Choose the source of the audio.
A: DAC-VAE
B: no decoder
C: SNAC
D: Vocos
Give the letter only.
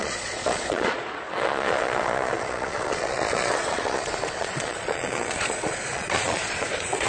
D